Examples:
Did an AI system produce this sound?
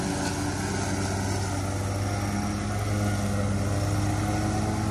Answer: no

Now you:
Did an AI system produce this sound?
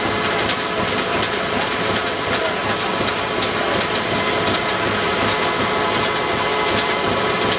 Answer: no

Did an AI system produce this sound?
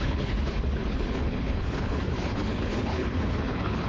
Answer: yes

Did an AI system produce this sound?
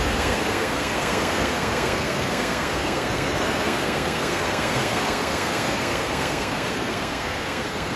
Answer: yes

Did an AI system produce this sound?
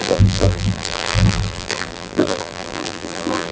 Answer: yes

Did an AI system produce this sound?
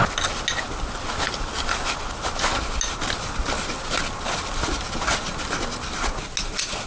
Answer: no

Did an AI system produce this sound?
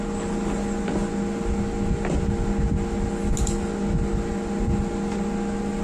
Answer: no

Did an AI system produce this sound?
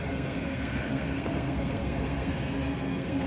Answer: yes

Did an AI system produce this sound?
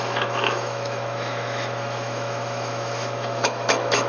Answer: yes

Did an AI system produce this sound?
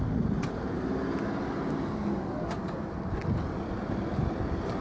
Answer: no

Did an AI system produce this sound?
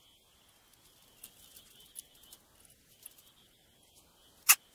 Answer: no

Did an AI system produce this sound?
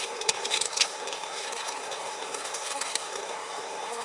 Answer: yes